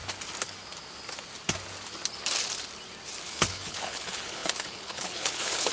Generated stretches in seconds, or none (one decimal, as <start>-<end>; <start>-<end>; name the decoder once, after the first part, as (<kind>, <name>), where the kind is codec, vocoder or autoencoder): 3.2-5.7 (codec, HILCodec)